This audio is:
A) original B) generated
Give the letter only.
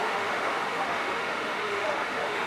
B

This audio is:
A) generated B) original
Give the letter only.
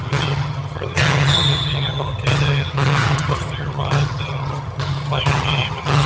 A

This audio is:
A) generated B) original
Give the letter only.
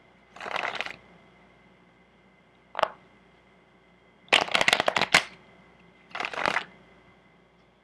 B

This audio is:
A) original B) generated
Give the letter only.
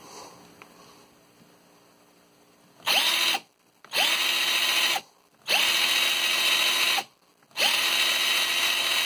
A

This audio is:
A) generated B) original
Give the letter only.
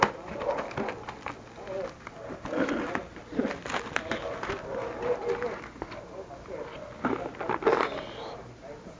B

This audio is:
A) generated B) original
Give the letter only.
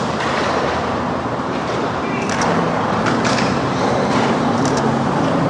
A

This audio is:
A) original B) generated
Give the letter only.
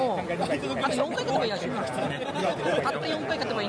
A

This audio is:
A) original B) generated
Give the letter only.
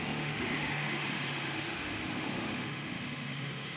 B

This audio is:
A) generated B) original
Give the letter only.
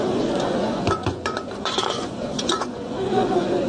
A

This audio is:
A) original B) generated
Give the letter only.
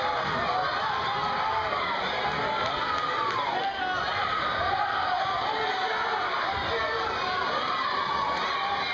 A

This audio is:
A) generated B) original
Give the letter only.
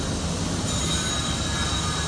B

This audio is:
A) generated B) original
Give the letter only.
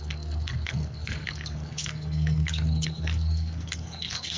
A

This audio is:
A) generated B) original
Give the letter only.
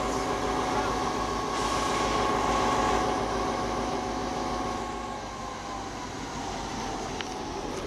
B